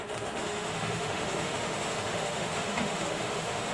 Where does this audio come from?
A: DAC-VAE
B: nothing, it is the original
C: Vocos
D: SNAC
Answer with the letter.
A